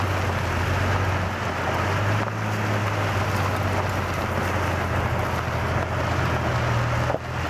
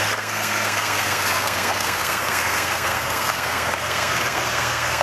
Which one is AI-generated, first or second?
second